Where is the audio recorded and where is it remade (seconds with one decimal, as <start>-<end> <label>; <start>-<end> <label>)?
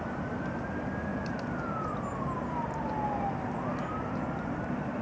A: 0.0-5.0 recorded